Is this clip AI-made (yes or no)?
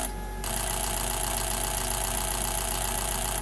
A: no